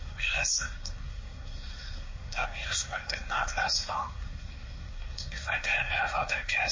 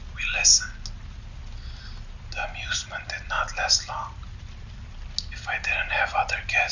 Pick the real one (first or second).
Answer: second